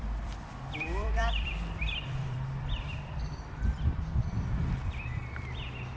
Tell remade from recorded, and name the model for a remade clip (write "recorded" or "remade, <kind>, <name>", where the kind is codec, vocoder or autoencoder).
remade, vocoder, BigVGAN v2